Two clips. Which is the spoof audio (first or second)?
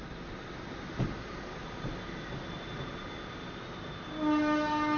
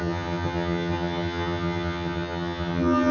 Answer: second